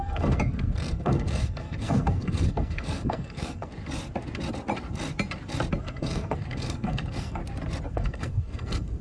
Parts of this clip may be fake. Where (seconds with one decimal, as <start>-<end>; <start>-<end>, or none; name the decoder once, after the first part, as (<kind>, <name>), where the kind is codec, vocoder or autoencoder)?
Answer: 0.0-3.7 (codec, SNAC); 5.8-7.4; 7.9-9.0